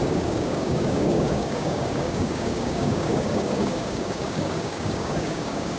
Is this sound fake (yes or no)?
yes